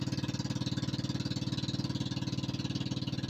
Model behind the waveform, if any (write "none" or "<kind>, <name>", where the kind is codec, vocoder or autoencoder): none